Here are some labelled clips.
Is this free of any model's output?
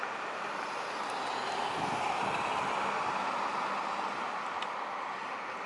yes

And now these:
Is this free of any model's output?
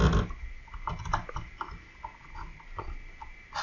yes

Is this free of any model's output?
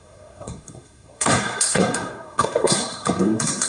no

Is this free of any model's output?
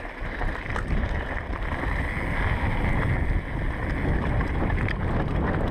yes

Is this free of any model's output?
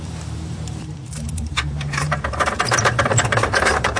no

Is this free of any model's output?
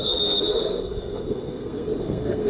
no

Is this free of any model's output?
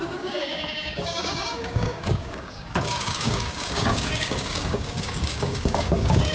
no